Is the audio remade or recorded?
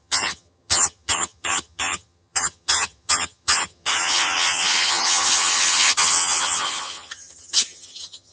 remade